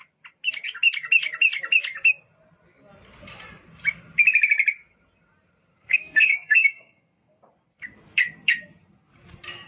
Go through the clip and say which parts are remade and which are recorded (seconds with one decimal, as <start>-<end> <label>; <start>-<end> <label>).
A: 0.0-5.8 recorded; 5.8-7.4 remade; 7.4-9.7 recorded